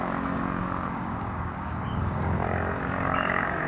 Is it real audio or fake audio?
fake